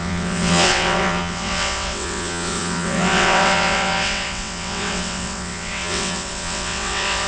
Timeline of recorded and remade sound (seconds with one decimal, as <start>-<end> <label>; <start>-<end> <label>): 0.0-7.3 remade